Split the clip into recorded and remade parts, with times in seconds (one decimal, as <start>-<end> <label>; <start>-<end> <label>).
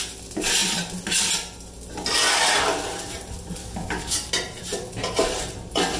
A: 0.0-3.6 recorded; 3.6-4.3 remade; 4.3-6.0 recorded